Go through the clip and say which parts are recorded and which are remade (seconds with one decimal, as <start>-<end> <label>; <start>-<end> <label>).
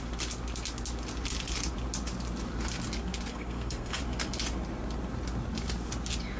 0.0-3.3 recorded; 3.3-4.0 remade; 4.0-6.4 recorded